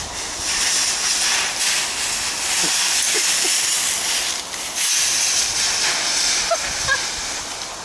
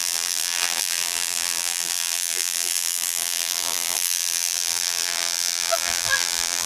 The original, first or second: first